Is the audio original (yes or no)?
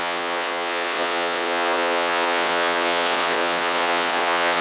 no